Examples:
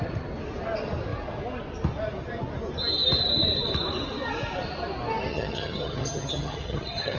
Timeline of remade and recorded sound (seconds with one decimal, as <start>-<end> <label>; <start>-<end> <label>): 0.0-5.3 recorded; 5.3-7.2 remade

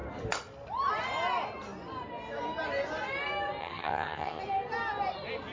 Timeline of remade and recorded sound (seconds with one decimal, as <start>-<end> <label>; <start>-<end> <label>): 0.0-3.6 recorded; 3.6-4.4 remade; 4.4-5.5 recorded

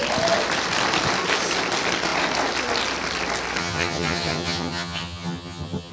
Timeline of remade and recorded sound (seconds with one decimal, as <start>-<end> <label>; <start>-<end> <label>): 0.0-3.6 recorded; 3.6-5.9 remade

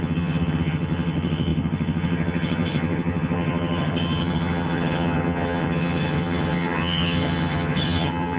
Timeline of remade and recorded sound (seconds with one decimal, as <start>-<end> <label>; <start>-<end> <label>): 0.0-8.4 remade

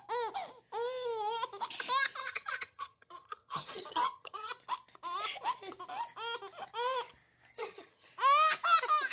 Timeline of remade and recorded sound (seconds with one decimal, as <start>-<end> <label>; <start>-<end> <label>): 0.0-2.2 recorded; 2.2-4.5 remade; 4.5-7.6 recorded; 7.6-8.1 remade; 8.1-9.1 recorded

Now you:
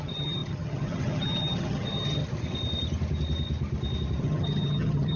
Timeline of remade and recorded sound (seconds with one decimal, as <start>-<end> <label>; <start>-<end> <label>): 0.0-2.2 remade; 2.2-4.2 recorded; 4.2-5.2 remade